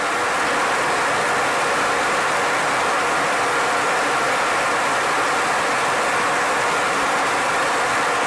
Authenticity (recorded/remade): recorded